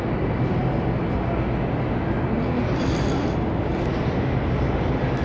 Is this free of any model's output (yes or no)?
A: yes